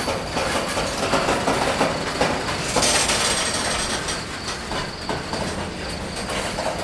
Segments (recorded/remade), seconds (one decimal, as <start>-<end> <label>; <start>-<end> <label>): 0.0-6.8 recorded